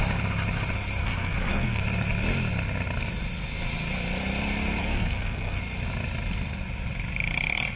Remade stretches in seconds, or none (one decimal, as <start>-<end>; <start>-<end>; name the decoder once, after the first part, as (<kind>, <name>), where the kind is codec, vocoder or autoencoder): 1.0-1.8 (codec, SNAC); 4.8-5.6